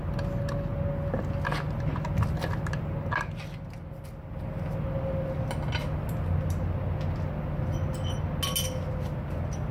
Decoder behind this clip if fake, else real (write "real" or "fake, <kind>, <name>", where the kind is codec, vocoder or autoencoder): real